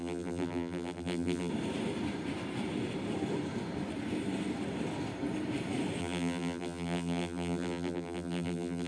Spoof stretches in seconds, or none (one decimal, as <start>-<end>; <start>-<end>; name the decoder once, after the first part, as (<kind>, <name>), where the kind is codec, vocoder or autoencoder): 0.0-1.5 (vocoder, BigVGAN v2); 6.0-8.9